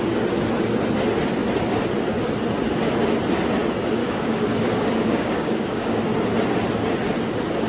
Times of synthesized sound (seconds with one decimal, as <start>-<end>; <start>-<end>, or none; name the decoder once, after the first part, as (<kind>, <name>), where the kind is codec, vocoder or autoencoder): 4.0-6.0 (codec, DAC)